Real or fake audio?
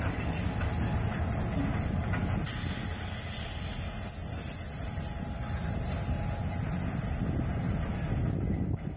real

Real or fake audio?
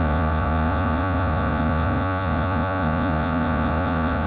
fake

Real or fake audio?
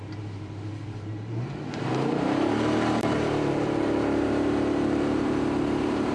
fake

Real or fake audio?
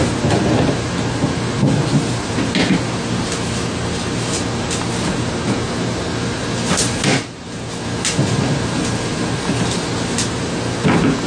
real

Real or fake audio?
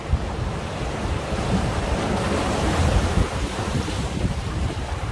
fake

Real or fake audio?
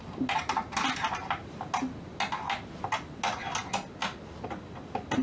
real